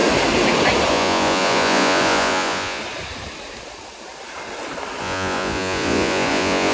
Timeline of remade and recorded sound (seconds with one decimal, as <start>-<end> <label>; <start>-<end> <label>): 0.0-0.9 recorded; 0.9-2.8 remade; 2.8-5.0 recorded; 5.0-6.7 remade